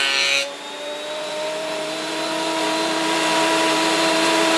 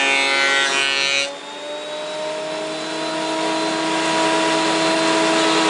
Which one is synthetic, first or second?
first